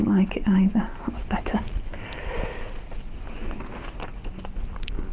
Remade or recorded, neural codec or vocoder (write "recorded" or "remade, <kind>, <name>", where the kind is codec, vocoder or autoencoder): recorded